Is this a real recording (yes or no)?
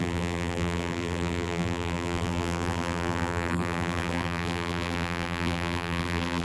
no